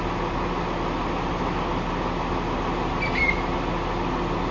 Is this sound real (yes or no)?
yes